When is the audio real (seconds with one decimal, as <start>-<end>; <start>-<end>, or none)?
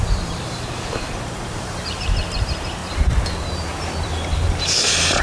2.8-3.4